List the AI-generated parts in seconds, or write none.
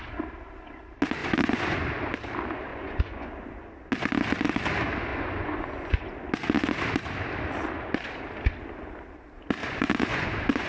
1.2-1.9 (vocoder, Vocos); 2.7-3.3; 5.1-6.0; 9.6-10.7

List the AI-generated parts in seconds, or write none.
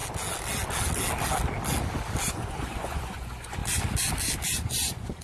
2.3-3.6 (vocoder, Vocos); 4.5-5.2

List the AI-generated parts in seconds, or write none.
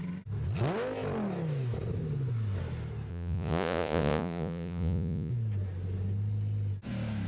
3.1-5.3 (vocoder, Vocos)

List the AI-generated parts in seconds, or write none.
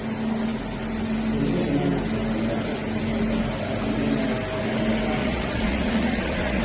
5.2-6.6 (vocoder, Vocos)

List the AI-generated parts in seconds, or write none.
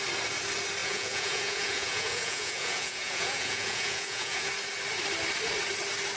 0.8-4.5 (vocoder, Vocos)